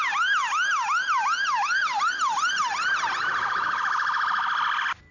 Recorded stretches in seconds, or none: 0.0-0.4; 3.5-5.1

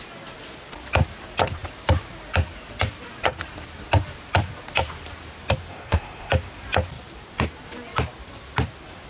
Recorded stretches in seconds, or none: 0.0-5.7; 6.3-9.1

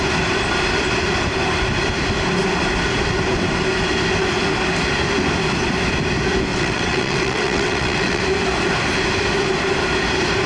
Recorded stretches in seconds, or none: 0.0-6.5; 8.2-10.5

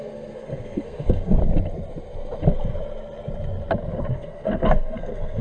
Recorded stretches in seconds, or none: 1.4-4.1